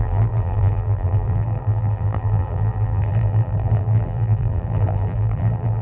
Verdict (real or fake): fake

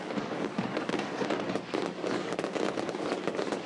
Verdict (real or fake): fake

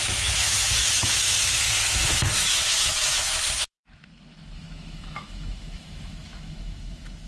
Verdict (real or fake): fake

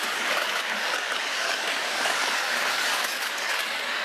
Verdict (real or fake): fake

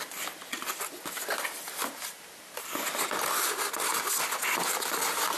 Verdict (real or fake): real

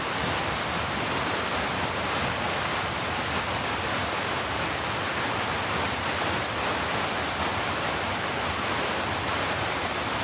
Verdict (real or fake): real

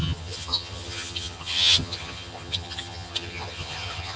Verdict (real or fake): fake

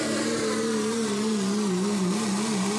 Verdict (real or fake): real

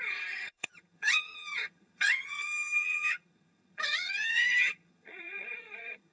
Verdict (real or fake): fake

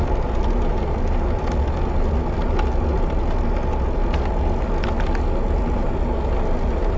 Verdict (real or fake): real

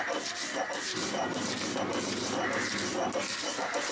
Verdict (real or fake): real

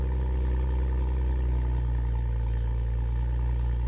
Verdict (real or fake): real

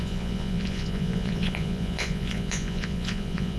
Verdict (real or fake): fake